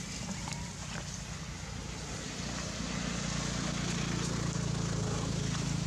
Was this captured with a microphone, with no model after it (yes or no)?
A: yes